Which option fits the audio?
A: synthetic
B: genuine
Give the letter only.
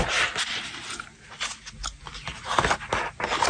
B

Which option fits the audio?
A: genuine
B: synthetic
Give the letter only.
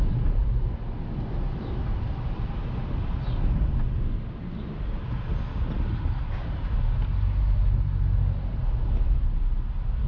A